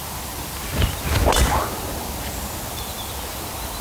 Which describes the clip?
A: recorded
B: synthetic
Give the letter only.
A